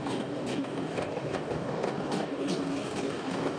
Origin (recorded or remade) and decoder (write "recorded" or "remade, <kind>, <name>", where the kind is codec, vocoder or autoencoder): remade, codec, DAC